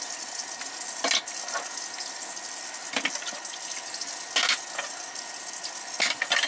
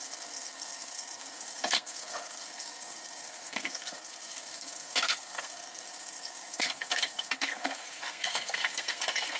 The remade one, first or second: second